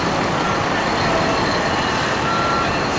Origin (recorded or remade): recorded